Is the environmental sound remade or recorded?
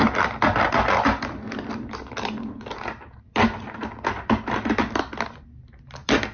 recorded